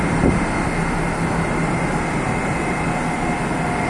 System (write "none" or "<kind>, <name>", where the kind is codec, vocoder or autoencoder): none